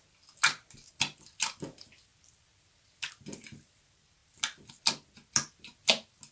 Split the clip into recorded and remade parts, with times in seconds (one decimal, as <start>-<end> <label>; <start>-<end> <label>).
0.0-6.3 recorded